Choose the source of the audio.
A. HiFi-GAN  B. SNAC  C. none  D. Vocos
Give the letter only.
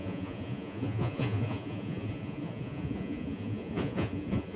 D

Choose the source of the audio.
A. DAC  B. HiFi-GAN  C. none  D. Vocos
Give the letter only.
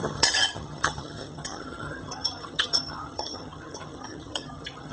B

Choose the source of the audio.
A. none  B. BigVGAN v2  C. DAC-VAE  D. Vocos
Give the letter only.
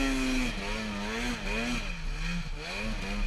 A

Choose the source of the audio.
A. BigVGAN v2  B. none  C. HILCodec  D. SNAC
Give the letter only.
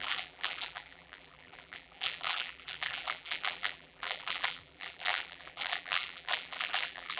A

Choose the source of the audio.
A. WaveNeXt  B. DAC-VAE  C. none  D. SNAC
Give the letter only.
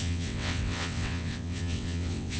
A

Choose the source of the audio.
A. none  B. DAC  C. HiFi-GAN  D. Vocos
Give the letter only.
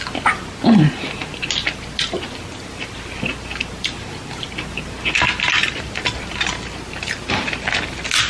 A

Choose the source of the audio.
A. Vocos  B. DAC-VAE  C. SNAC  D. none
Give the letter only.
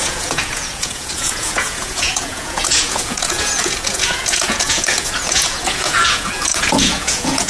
A